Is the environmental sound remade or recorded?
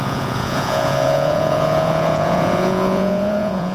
remade